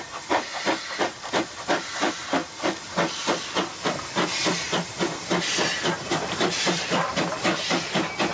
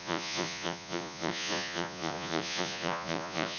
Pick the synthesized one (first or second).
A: second